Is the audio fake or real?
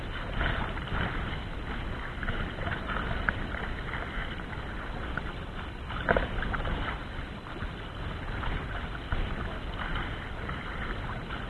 real